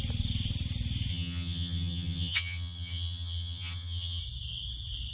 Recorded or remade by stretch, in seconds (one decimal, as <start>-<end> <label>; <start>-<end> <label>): 0.0-1.1 recorded; 1.1-4.2 remade; 4.2-5.1 recorded